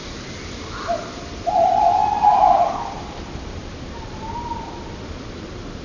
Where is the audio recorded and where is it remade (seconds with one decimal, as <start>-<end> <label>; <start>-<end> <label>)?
0.0-5.8 remade